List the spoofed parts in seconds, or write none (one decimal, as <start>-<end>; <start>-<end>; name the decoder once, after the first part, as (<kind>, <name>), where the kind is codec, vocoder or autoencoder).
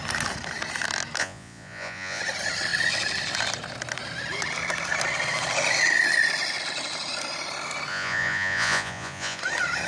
1.2-2.2 (vocoder, Vocos); 7.9-9.4